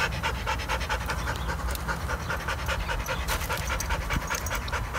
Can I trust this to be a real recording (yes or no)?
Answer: yes